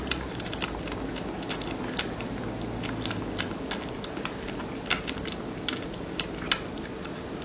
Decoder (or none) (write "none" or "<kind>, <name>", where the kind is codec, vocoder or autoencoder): none